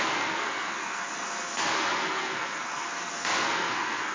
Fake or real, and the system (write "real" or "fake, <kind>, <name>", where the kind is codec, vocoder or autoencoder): fake, codec, SNAC